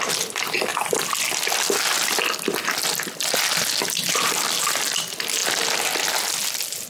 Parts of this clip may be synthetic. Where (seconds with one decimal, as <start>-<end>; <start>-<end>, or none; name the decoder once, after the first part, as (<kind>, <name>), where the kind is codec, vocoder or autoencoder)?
none